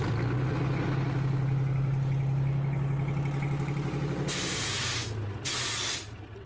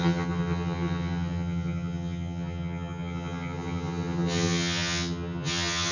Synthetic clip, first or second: second